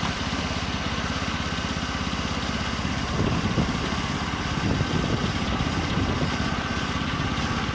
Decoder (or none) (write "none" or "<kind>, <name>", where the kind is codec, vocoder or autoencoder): none